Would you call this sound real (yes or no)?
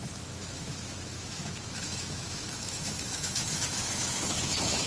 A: no